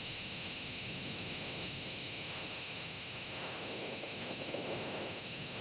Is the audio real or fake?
fake